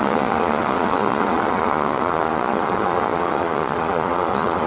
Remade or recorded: remade